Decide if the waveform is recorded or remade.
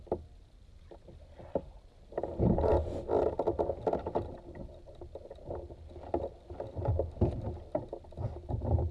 recorded